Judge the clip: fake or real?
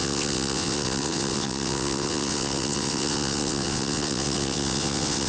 fake